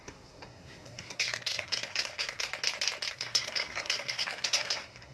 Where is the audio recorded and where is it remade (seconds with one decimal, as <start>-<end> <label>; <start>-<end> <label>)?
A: 0.0-2.5 remade; 2.5-3.1 recorded; 3.1-5.1 remade